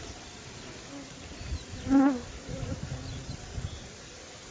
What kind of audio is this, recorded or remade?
recorded